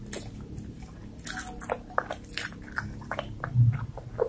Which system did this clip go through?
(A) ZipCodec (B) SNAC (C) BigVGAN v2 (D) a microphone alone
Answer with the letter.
D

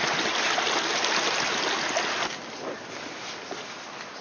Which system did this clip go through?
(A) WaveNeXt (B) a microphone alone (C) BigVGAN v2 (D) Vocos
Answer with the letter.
B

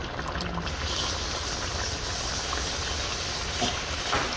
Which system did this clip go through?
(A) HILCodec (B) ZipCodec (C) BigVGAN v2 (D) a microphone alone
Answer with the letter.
D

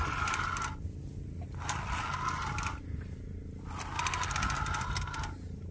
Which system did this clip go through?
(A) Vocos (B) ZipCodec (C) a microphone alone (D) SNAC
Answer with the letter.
C